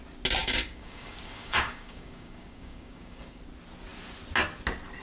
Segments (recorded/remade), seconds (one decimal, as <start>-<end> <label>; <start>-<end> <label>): 0.0-0.4 recorded; 0.4-3.4 remade; 3.4-5.0 recorded